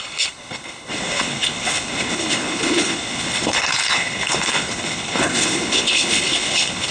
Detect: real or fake fake